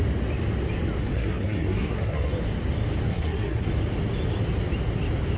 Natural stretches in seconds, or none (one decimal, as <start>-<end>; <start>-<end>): 0.0-1.0; 2.3-3.1; 3.7-5.4